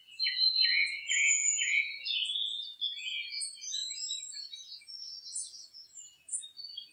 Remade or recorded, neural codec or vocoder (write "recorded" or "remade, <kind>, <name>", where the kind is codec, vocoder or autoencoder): remade, vocoder, Vocos